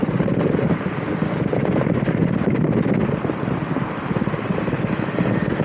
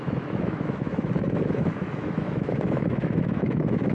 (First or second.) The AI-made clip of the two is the second